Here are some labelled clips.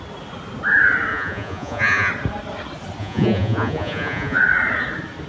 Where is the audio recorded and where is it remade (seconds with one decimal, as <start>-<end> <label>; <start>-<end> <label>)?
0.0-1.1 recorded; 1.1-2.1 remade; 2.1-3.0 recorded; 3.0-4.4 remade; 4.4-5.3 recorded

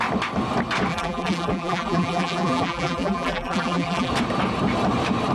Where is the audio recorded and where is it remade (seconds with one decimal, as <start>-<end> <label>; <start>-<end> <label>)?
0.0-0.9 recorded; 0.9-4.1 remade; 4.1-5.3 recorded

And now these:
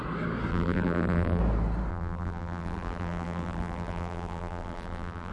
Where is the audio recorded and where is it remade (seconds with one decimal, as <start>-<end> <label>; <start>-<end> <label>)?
0.0-0.5 recorded; 0.5-1.4 remade; 1.4-1.9 recorded; 1.9-5.3 remade